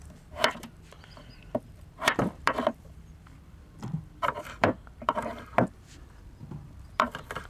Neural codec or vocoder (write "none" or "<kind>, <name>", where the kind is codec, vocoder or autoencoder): vocoder, BigVGAN v2